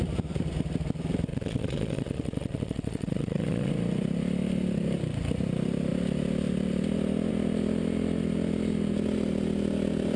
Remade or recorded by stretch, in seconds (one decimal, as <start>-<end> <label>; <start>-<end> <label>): 0.0-1.3 recorded; 1.3-3.7 remade; 3.7-10.2 recorded